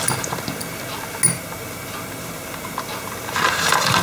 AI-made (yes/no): no